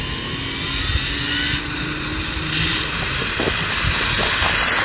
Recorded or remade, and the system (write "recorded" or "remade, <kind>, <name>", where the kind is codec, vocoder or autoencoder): recorded